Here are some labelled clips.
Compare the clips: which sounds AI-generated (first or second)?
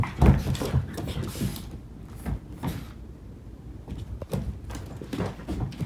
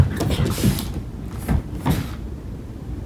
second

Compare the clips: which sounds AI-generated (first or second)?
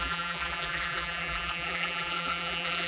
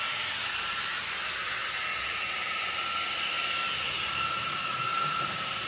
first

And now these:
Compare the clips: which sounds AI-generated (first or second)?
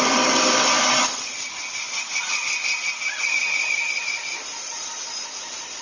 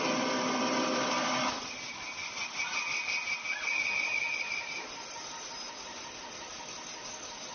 first